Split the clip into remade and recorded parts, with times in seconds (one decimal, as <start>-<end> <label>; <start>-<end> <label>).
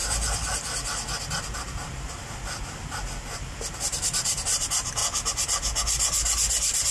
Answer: 0.0-6.9 recorded